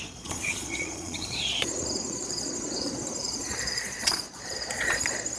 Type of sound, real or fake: fake